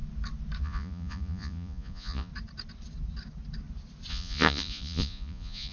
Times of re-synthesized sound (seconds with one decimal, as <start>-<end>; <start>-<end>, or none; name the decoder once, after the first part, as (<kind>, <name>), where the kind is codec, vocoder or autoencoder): 0.6-2.3 (vocoder, Vocos); 4.1-5.7